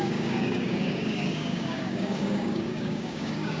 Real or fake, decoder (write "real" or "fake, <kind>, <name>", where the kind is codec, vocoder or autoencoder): fake, codec, DAC